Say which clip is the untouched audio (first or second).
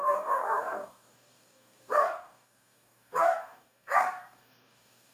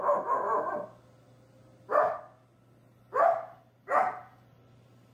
second